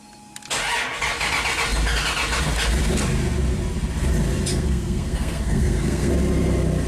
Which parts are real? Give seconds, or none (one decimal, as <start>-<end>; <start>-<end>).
0.0-4.5; 6.1-6.9